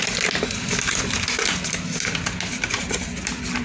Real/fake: real